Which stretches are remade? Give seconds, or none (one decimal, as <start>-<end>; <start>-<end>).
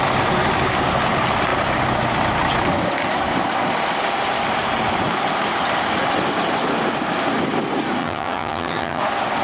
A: 8.0-9.0